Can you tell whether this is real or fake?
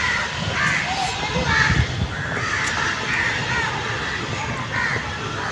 real